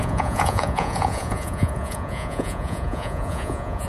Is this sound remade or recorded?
remade